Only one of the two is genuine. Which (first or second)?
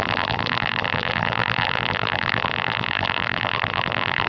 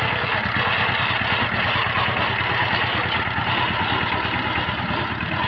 second